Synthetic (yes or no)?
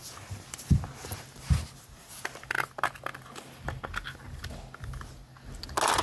no